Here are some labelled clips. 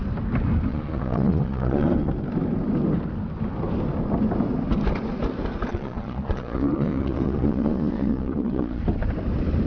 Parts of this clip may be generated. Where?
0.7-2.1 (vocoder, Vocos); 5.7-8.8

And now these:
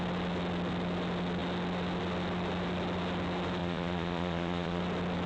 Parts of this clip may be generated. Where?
3.6-4.8 (vocoder, Vocos)